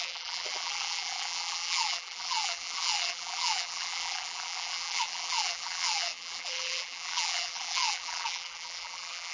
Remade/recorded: remade